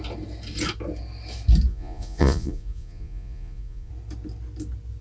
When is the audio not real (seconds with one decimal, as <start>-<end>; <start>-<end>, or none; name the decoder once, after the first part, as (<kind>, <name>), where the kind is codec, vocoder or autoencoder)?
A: 1.7-3.9 (vocoder, Vocos)